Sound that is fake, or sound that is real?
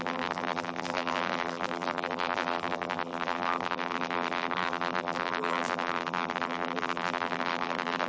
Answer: fake